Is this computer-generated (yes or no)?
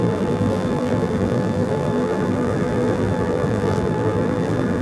yes